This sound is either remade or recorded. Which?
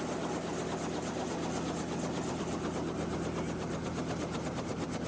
recorded